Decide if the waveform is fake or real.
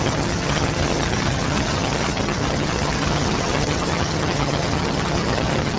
fake